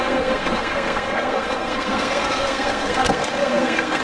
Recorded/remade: remade